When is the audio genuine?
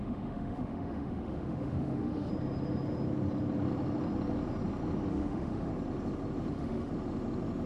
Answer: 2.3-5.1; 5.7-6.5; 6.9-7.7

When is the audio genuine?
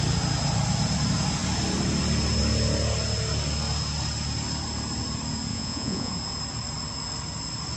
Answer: 0.0-5.5; 6.1-7.8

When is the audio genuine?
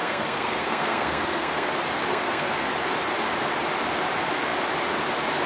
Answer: 1.7-2.1; 2.7-5.5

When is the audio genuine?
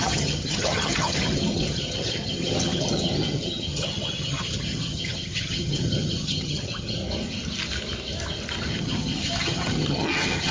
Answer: 7.0-8.7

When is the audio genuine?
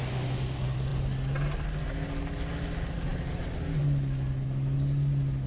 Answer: 0.0-5.5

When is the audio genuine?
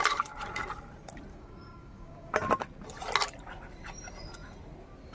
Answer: 0.0-1.3; 2.3-5.1